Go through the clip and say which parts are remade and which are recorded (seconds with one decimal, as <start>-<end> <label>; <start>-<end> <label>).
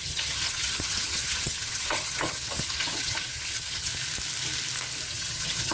0.0-3.9 remade; 3.9-5.1 recorded; 5.1-5.7 remade